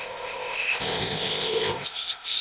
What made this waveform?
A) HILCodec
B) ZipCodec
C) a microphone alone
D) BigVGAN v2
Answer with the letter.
B